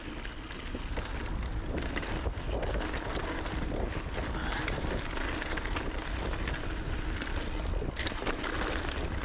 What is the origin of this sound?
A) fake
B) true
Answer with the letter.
B